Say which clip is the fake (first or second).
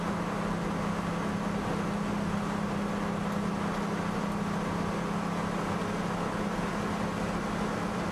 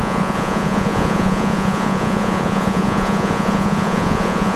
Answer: second